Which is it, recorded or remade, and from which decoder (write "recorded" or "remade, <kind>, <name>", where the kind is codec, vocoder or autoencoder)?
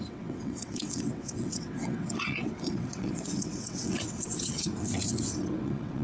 remade, vocoder, WaveNeXt